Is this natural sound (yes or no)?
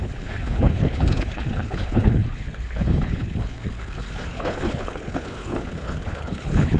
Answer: no